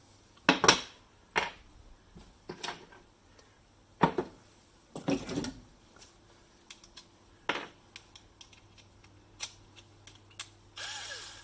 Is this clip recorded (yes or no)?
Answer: yes